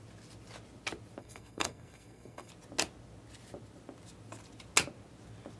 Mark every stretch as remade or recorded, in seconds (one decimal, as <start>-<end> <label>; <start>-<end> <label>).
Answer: 0.0-1.2 recorded; 1.2-2.5 remade; 2.5-5.6 recorded